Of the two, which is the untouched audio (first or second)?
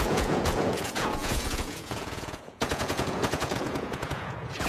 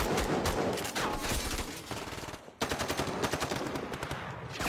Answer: second